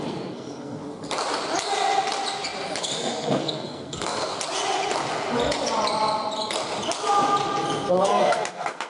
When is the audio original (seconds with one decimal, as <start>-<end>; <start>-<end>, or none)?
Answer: 0.8-2.8; 4.3-7.9